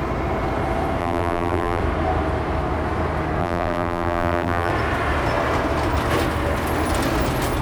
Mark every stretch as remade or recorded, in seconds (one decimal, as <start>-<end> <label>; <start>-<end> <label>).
0.0-1.0 recorded; 1.0-1.8 remade; 1.8-3.4 recorded; 3.4-4.7 remade; 4.7-7.6 recorded

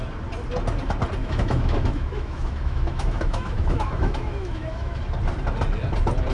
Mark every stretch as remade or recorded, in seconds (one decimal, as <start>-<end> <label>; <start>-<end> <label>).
0.0-1.2 recorded; 1.2-5.0 remade; 5.0-6.3 recorded

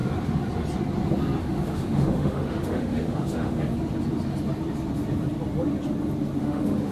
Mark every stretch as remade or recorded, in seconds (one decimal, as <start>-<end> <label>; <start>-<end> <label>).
0.0-1.4 recorded; 1.4-3.7 remade; 3.7-6.4 recorded; 6.4-6.9 remade

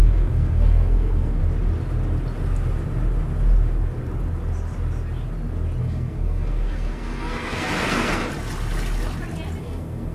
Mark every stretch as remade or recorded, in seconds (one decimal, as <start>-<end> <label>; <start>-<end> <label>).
0.0-1.4 remade; 1.4-5.8 recorded; 5.8-8.2 remade; 8.2-9.6 recorded; 9.6-10.1 remade

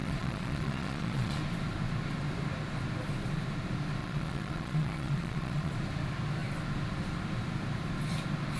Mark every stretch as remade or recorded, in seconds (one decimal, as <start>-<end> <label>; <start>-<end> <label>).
0.0-1.4 remade; 1.4-4.0 recorded; 4.0-5.7 remade; 5.7-8.6 recorded

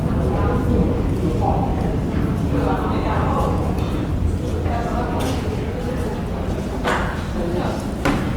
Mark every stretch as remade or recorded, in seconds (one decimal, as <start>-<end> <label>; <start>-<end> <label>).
0.0-8.4 recorded

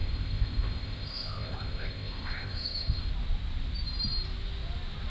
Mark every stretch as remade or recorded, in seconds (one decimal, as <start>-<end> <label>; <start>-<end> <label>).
0.0-3.1 remade; 3.1-5.1 recorded

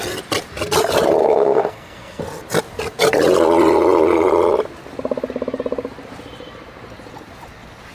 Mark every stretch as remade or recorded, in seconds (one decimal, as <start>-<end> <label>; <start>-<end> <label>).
0.0-1.2 recorded; 1.2-2.2 remade; 2.2-7.9 recorded